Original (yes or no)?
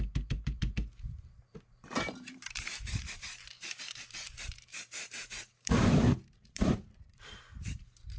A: no